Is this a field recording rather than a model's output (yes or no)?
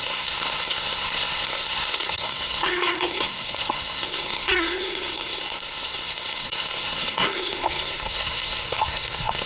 no